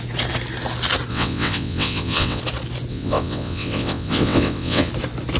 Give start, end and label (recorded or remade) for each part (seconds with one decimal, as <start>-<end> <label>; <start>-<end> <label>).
0.0-1.1 recorded; 1.1-2.4 remade; 2.4-2.9 recorded; 2.9-4.9 remade; 4.9-5.4 recorded

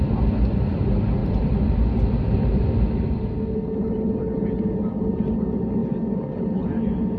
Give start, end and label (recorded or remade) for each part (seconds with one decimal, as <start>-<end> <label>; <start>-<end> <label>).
0.0-1.2 recorded; 1.2-5.2 remade; 5.2-7.2 recorded

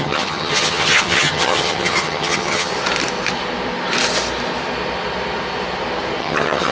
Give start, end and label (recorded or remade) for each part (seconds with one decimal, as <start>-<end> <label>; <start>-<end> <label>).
0.0-2.7 remade; 2.7-6.2 recorded; 6.2-6.7 remade

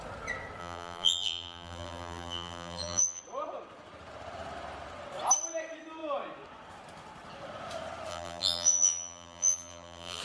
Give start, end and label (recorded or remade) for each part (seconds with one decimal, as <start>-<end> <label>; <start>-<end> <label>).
0.0-0.6 recorded; 0.6-3.2 remade; 3.2-8.1 recorded; 8.1-10.2 remade

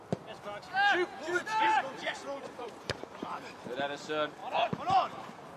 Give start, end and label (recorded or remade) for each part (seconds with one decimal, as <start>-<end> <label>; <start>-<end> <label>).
0.0-1.5 recorded; 1.5-3.5 remade; 3.5-4.4 recorded; 4.4-5.1 remade; 5.1-5.6 recorded

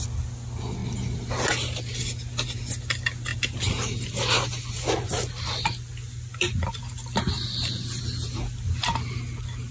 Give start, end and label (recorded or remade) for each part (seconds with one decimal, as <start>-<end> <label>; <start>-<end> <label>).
0.0-9.7 recorded

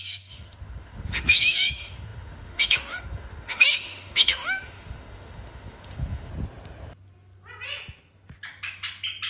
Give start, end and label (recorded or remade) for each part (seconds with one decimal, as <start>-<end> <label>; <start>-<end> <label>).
0.0-6.3 remade; 6.3-9.3 recorded